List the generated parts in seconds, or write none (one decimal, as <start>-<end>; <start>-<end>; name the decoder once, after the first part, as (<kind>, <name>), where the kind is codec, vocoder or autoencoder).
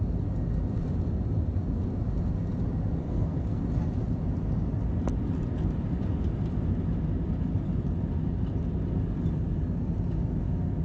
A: 3.0-3.6 (codec, SNAC)